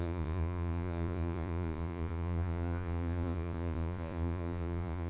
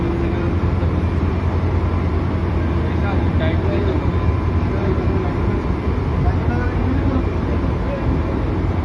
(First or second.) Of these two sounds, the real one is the second